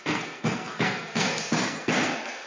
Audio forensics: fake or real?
fake